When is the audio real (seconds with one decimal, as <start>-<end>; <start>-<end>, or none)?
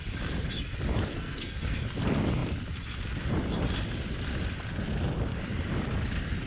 0.0-1.1; 1.8-6.5